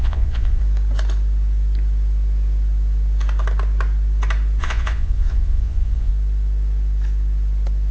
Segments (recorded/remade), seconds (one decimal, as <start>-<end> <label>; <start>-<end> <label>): 0.0-0.6 remade; 0.6-4.6 recorded; 4.6-6.1 remade; 6.1-7.9 recorded